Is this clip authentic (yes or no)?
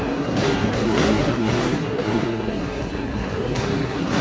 no